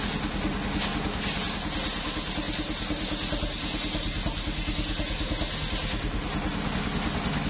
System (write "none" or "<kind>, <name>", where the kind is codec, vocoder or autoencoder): none